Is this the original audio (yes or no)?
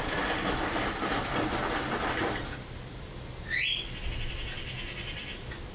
yes